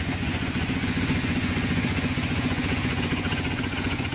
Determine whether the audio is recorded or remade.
remade